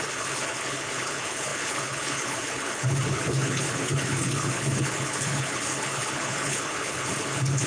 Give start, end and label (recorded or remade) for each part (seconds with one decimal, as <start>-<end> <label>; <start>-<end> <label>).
0.0-7.7 remade